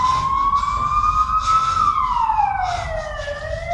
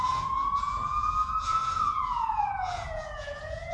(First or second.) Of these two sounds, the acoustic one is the first